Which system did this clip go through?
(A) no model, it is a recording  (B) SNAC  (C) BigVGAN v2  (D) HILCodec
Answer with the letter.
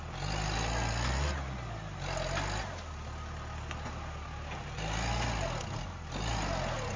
A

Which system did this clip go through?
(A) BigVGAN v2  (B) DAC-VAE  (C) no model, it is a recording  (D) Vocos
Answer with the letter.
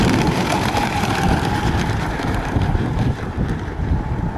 A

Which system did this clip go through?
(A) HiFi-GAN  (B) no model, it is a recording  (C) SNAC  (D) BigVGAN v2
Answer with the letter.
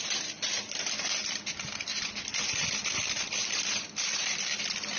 D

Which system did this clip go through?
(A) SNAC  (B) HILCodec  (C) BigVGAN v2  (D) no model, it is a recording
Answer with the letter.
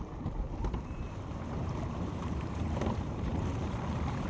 C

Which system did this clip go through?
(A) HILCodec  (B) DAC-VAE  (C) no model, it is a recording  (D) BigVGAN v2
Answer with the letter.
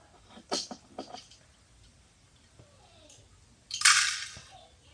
D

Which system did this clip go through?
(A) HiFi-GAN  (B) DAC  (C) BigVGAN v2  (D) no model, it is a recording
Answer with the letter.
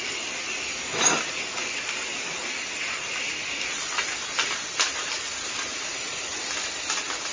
C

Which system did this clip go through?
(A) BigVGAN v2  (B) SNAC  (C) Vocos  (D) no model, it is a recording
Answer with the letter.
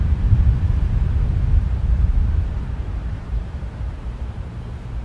A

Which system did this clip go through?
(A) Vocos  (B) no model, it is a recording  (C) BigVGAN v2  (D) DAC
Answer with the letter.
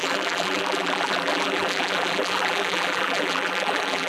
C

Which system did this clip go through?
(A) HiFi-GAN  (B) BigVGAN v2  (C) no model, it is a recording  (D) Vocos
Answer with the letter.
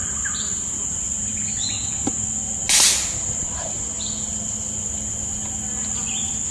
C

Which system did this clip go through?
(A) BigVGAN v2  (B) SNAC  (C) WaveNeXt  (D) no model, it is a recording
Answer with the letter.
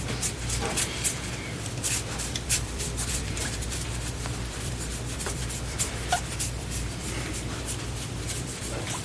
A